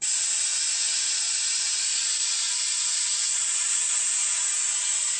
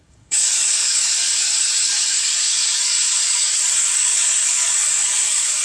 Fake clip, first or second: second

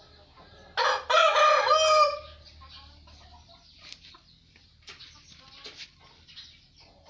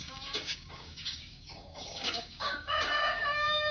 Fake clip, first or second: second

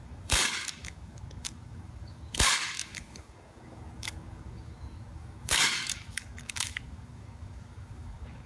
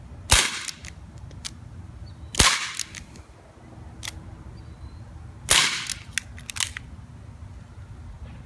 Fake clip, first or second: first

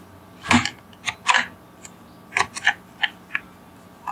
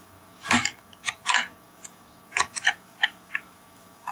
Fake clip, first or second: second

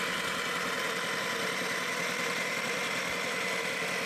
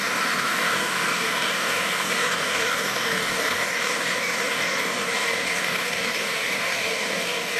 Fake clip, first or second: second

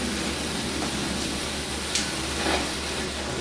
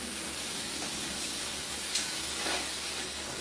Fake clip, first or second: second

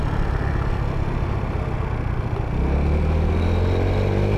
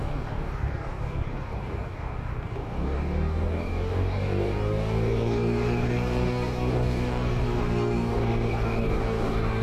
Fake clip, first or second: second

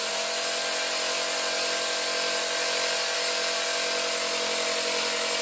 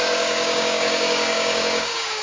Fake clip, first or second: second